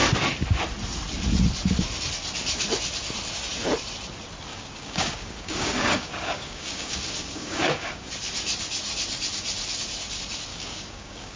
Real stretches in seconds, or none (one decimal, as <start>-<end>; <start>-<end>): 0.0-4.5; 8.1-10.5